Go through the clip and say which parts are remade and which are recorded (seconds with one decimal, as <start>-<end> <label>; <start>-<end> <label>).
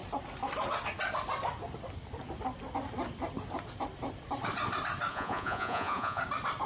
0.0-5.1 recorded; 5.1-6.2 remade; 6.2-6.7 recorded